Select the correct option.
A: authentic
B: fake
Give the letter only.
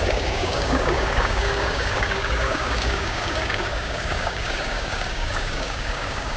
B